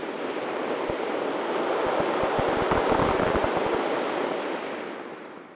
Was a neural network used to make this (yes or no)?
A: no